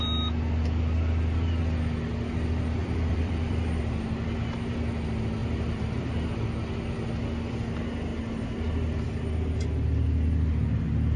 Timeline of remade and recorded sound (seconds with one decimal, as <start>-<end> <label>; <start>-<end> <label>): 0.0-2.8 recorded; 2.8-3.8 remade; 3.8-5.4 recorded; 5.4-6.4 remade; 6.4-11.2 recorded